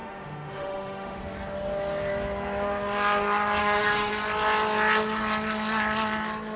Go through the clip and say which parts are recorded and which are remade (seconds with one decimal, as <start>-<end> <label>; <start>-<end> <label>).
0.0-1.2 remade; 1.2-3.6 recorded; 3.6-4.1 remade; 4.1-6.6 recorded